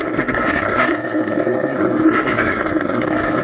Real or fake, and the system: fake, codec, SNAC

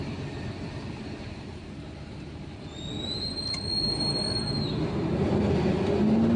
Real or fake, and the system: real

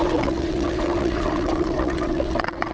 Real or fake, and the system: fake, vocoder, WaveNeXt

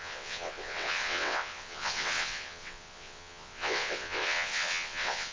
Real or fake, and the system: fake, vocoder, WaveNeXt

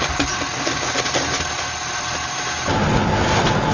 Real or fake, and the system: real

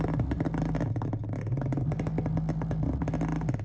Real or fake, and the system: real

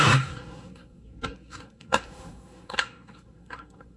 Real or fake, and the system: fake, codec, SNAC